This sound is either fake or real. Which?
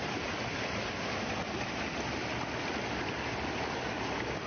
real